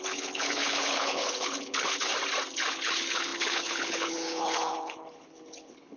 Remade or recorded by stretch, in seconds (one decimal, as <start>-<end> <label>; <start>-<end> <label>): 0.0-2.1 remade; 2.1-2.7 recorded; 2.7-6.0 remade

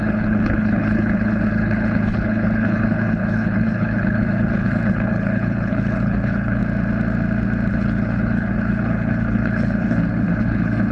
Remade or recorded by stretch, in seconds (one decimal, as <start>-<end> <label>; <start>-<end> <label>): 0.0-6.6 remade; 6.6-7.7 recorded; 7.7-10.9 remade

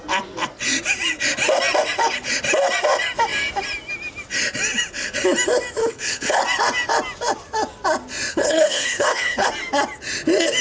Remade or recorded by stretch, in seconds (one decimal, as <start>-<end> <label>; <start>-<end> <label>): 0.0-5.8 recorded; 5.8-6.4 remade; 6.4-8.3 recorded; 8.3-9.5 remade; 9.5-10.6 recorded

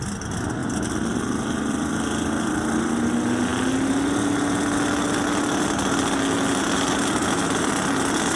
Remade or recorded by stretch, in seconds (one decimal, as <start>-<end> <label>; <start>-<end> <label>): 0.0-8.4 recorded

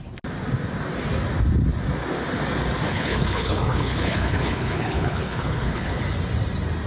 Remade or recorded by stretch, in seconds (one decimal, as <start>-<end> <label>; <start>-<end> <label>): 0.0-2.9 recorded; 2.9-6.0 remade; 6.0-6.9 recorded

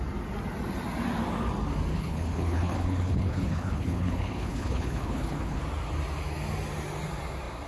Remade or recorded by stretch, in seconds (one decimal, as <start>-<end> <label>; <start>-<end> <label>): 0.0-1.9 recorded; 1.9-5.6 remade; 5.6-7.7 recorded